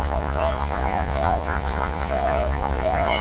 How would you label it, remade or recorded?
remade